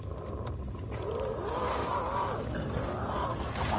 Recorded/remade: recorded